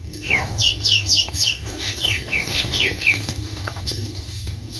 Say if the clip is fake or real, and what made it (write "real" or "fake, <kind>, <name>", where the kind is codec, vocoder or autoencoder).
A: fake, codec, DAC